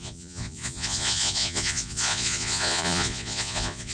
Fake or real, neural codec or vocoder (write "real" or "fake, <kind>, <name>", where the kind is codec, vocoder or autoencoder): fake, vocoder, Vocos